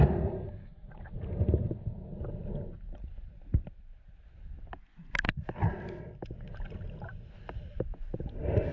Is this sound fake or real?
real